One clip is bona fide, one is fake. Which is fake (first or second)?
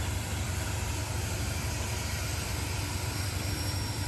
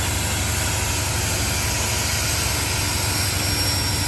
first